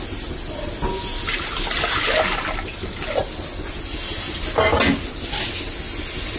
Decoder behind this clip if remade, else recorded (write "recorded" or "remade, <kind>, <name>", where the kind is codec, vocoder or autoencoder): recorded